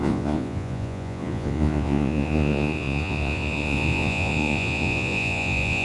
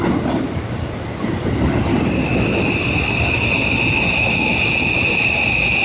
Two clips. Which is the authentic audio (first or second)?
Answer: second